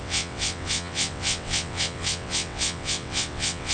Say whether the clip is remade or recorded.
remade